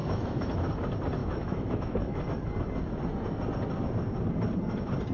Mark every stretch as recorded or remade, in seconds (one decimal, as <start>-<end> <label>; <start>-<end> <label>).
0.0-0.7 remade; 0.7-1.2 recorded; 1.2-2.2 remade; 2.2-5.1 recorded